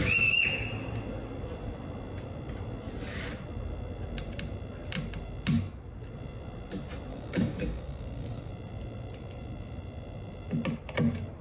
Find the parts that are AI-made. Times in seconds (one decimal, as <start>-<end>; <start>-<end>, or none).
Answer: 7.1-8.5